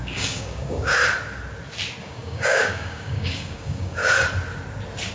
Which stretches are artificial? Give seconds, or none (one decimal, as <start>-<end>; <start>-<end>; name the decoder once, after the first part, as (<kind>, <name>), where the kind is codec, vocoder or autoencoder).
0.0-1.0 (codec, DAC); 2.0-4.0